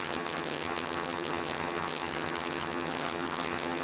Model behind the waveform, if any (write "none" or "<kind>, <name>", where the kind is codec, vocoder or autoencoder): vocoder, HiFi-GAN